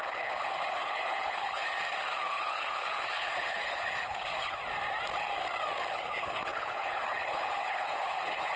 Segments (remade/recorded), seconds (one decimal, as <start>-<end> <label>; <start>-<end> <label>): 0.0-1.6 remade; 1.6-2.3 recorded; 2.3-4.6 remade; 4.6-5.9 recorded; 5.9-8.6 remade